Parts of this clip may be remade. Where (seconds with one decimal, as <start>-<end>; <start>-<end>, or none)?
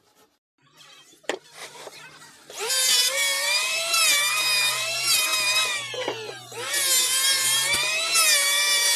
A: 0.0-5.3; 6.3-9.0